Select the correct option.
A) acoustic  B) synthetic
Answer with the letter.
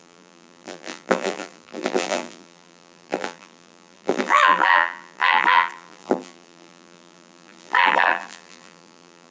B